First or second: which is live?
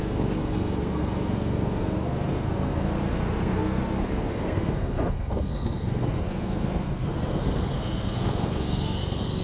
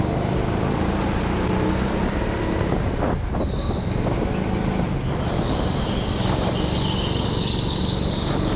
second